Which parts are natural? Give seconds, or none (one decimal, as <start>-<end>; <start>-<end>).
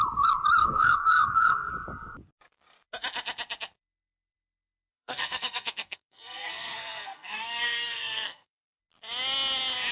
0.0-0.6; 1.7-4.9; 8.8-9.9